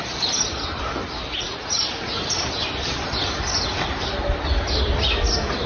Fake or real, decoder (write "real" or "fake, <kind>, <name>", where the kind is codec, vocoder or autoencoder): real